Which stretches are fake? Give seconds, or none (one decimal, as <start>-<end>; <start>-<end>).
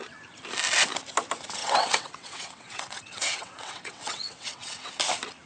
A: 1.6-4.9